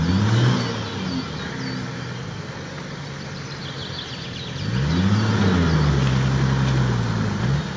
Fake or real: real